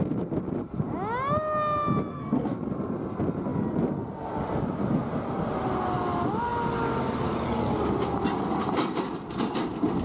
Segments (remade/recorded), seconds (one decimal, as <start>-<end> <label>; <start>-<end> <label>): 0.0-2.1 recorded; 2.1-2.6 remade; 2.6-10.0 recorded